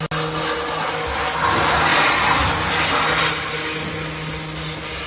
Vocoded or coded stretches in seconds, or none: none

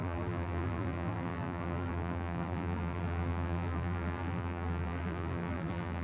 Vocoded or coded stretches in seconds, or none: 0.0-6.0 (vocoder, BigVGAN v2)

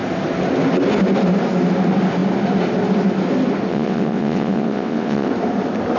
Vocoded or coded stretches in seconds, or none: 3.7-5.3 (vocoder, WaveNeXt)

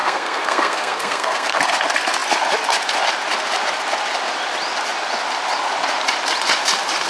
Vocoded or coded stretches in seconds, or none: 0.0-1.6 (codec, SNAC)